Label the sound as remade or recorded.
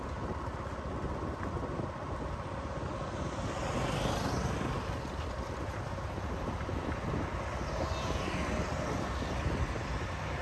recorded